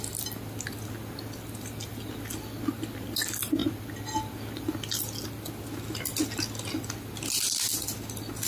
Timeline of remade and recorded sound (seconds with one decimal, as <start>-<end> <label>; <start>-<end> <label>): 0.0-8.5 recorded